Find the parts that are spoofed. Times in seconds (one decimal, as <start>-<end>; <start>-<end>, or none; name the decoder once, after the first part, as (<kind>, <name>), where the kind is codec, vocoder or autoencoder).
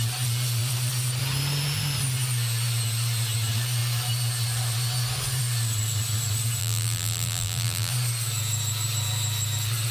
6.6-7.9 (vocoder, BigVGAN v2)